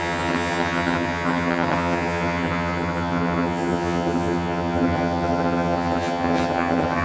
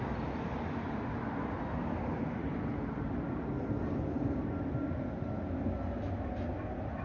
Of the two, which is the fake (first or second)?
first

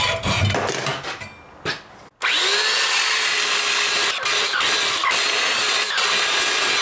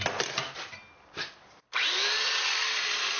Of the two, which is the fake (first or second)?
second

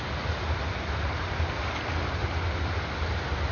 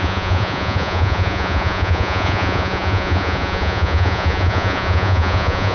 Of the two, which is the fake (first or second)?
second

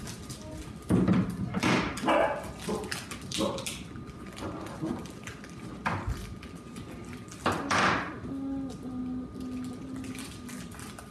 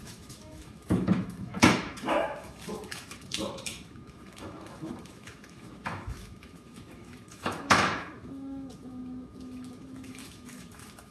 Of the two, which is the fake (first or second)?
second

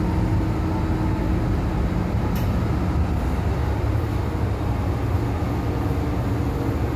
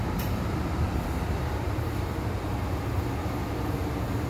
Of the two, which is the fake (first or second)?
second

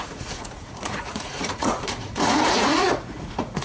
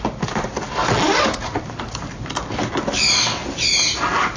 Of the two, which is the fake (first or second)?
first